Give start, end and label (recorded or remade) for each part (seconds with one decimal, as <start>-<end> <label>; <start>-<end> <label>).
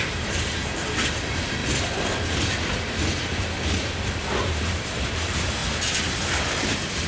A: 0.0-1.6 remade; 1.6-4.4 recorded; 4.4-5.6 remade; 5.6-6.6 recorded; 6.6-7.1 remade